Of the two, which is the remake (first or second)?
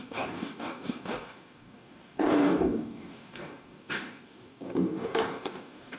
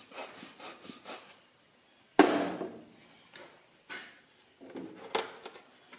first